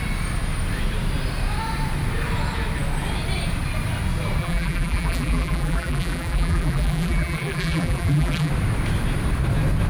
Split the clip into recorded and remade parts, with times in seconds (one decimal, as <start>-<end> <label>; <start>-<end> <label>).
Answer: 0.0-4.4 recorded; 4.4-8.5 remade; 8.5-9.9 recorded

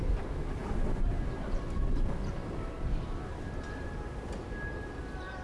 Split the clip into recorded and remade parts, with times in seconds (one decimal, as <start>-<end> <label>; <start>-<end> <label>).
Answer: 0.0-5.4 recorded

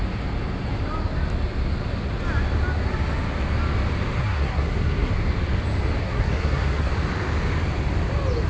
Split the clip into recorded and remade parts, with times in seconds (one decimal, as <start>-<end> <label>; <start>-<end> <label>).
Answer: 0.0-4.2 recorded; 4.2-5.1 remade; 5.1-6.0 recorded; 6.0-6.9 remade; 6.9-8.5 recorded